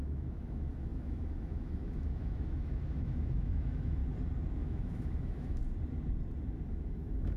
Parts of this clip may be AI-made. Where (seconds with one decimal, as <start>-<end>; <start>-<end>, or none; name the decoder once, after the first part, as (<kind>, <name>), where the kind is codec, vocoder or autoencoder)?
0.0-4.0 (autoencoder, DAC-VAE); 4.6-5.6; 6.7-7.4